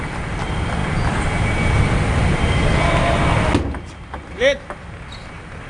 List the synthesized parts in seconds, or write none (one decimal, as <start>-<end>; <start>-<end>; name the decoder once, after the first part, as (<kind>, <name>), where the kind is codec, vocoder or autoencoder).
none

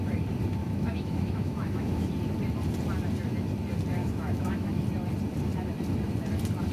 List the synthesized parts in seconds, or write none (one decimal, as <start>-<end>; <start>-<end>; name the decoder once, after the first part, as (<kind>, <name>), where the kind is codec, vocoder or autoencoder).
0.6-2.1 (autoencoder, DAC-VAE); 4.0-4.8

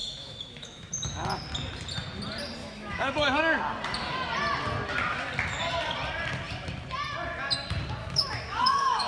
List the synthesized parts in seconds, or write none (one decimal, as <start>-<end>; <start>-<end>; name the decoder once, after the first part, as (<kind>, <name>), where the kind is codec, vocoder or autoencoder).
0.0-0.9 (autoencoder, DAC-VAE); 2.6-3.4; 8.0-9.1

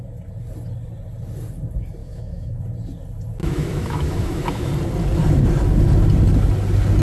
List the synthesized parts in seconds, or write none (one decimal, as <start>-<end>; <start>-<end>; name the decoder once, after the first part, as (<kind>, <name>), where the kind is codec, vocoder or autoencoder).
2.0-2.6 (autoencoder, DAC-VAE); 3.4-4.7

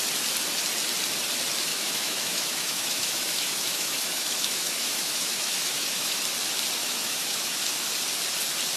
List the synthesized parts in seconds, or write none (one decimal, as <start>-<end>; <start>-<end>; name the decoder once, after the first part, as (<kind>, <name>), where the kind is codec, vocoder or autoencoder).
1.7-6.2 (autoencoder, DAC-VAE); 6.8-7.9

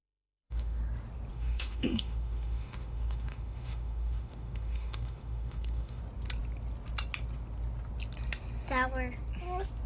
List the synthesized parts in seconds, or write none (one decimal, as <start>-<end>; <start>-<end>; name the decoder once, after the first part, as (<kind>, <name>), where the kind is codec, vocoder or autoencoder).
0.0-0.8 (autoencoder, DAC-VAE); 1.3-6.0

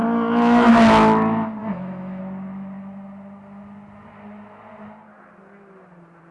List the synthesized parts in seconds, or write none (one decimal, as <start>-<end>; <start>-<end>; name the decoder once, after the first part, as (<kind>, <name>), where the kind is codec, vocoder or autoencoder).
0.0-0.7 (autoencoder, DAC-VAE); 1.6-2.2

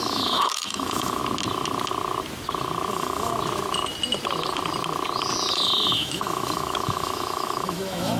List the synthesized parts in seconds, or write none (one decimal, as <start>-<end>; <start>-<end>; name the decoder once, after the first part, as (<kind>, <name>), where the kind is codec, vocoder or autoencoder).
0.0-1.2 (autoencoder, DAC-VAE); 2.9-3.3; 5.5-8.2